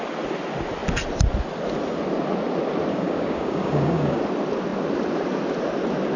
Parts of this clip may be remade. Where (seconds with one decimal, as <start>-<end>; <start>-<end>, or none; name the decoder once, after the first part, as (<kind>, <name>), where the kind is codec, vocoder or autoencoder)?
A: 2.9-4.2 (codec, DAC)